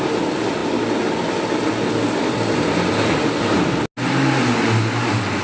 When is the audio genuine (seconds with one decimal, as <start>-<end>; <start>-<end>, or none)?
0.0-5.4